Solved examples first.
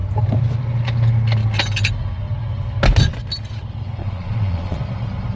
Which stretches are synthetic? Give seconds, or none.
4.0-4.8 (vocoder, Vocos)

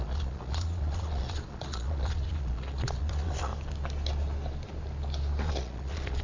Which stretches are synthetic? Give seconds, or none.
0.0-3.5 (vocoder, Vocos); 5.4-6.2

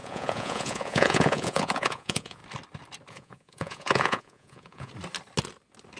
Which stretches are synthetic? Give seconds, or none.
0.0-2.4 (vocoder, Vocos); 3.1-4.9

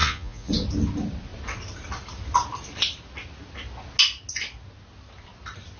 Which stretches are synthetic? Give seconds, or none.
0.0-0.5 (vocoder, Vocos)

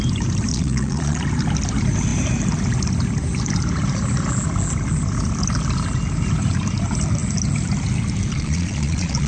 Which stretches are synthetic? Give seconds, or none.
0.5-1.2 (vocoder, Vocos); 8.3-9.3

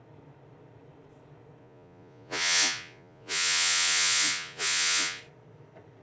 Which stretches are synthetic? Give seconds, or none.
1.6-5.2 (vocoder, Vocos)